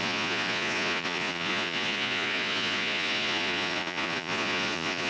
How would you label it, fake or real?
fake